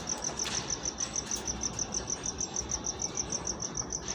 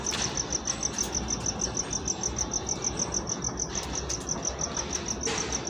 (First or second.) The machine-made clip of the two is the first